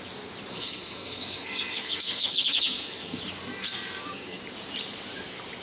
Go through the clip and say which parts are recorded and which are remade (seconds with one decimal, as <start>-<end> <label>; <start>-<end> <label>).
0.0-0.5 recorded; 0.5-3.2 remade; 3.2-3.6 recorded; 3.6-4.4 remade; 4.4-5.6 recorded